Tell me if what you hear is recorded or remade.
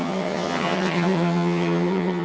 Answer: remade